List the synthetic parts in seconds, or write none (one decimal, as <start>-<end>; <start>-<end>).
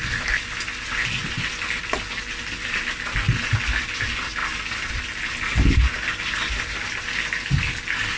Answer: none